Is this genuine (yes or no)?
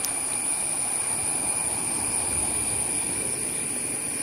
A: yes